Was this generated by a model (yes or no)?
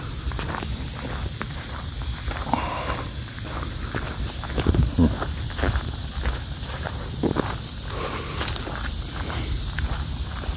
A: no